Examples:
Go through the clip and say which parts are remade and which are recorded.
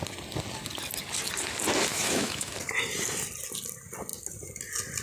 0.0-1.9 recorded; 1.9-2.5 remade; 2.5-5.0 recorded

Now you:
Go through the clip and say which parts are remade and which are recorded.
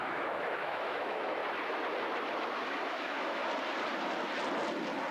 0.0-1.4 remade; 1.4-2.9 recorded; 2.9-3.4 remade; 3.4-5.1 recorded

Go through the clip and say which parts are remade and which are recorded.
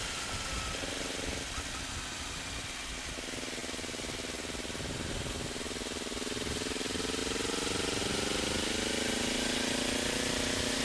0.0-10.8 recorded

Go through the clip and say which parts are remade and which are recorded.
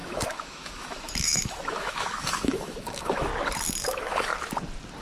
0.0-3.3 remade; 3.3-3.8 recorded; 3.8-4.3 remade; 4.3-5.0 recorded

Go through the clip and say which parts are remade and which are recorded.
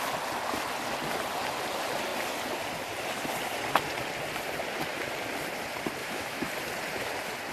0.0-6.0 recorded; 6.0-6.5 remade; 6.5-7.5 recorded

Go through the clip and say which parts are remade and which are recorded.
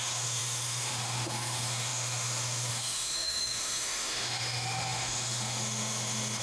0.0-6.4 remade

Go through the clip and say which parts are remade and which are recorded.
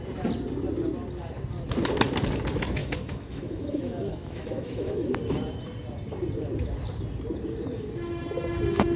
0.0-2.8 recorded; 2.8-5.1 remade; 5.1-9.0 recorded